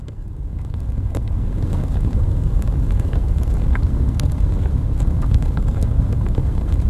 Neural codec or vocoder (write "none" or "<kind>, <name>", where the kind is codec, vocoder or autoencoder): codec, SNAC